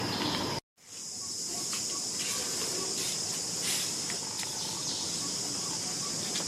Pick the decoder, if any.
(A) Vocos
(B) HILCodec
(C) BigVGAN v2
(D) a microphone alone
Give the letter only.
D